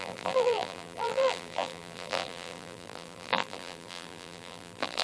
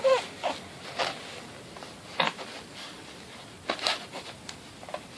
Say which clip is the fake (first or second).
first